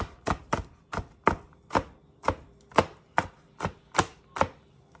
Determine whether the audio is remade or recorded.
recorded